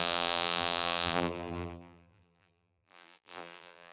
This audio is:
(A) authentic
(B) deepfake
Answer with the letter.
B